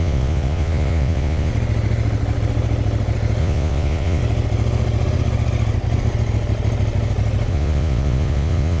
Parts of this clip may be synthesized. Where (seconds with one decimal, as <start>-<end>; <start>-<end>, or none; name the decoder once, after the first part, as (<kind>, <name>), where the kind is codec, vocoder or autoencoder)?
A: 0.0-1.5 (vocoder, Vocos); 3.4-4.2; 7.5-8.8